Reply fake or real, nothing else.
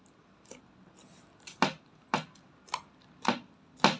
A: real